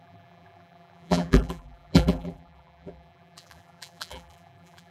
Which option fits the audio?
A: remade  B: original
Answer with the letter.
A